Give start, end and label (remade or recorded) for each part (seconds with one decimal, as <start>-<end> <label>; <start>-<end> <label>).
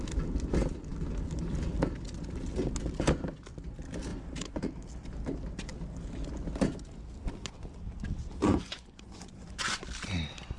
0.0-4.1 recorded; 4.1-4.7 remade; 4.7-8.4 recorded; 8.4-9.8 remade; 9.8-10.6 recorded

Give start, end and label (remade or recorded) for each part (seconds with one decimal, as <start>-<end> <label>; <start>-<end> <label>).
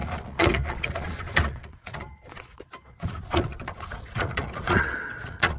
0.0-5.6 remade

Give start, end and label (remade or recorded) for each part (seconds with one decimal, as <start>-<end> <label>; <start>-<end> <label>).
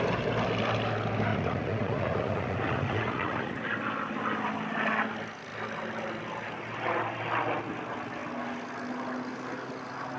0.0-1.3 recorded; 1.3-3.6 remade; 3.6-10.2 recorded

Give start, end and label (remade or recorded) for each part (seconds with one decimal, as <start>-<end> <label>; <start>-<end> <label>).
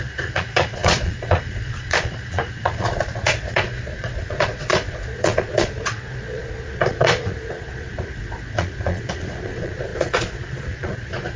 0.0-11.4 remade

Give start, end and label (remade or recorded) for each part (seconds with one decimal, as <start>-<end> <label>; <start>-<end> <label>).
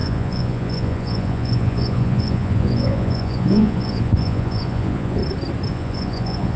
0.0-5.2 remade; 5.2-5.7 recorded; 5.7-6.6 remade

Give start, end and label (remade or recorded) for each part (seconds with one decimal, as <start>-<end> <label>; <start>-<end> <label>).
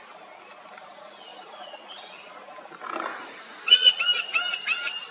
0.0-1.3 recorded; 1.3-2.3 remade; 2.3-3.1 recorded; 3.1-4.0 remade; 4.0-5.1 recorded